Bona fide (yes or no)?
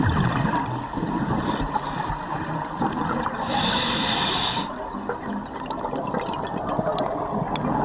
yes